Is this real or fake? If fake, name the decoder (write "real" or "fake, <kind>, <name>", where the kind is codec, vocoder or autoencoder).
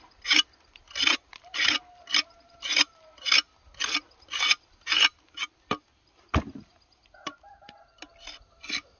real